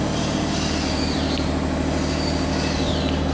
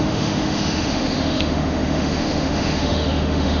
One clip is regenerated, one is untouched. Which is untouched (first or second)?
first